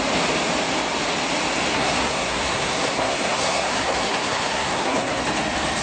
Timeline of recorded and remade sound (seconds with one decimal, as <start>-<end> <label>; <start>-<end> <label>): 0.0-1.7 recorded; 1.7-5.2 remade; 5.2-5.8 recorded